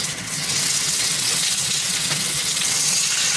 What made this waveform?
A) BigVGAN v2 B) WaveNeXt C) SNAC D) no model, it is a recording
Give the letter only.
B